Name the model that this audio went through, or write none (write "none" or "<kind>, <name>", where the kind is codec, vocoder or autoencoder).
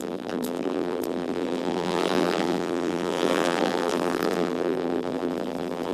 vocoder, BigVGAN v2